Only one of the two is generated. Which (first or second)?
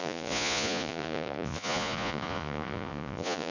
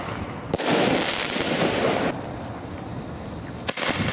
first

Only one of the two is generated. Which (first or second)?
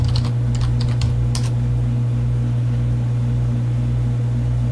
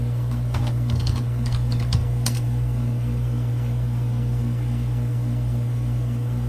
second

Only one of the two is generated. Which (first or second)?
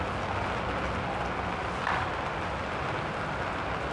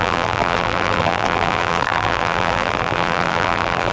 second